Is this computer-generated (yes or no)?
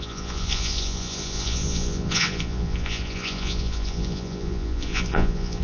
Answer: yes